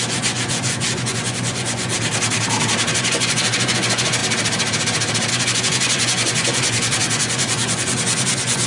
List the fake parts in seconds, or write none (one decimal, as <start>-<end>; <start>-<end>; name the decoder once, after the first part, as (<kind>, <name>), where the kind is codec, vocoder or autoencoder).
0.0-1.9 (vocoder, Vocos); 2.9-4.2; 5.3-8.7